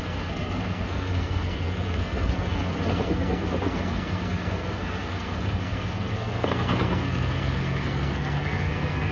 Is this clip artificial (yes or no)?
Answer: yes